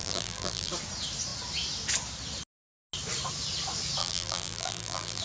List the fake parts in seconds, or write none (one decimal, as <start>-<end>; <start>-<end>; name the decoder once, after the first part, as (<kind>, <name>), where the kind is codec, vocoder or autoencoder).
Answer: 0.0-0.7 (vocoder, BigVGAN v2); 4.0-5.2